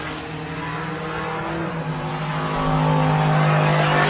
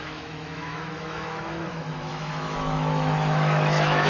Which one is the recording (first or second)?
first